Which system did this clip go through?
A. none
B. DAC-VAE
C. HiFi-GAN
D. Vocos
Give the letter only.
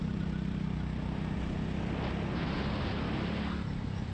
A